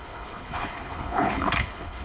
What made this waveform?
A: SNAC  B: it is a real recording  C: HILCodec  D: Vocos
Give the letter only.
C